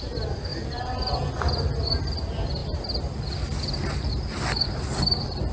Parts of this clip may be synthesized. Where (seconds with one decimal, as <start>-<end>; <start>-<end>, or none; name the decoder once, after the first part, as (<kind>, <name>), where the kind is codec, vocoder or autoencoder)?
none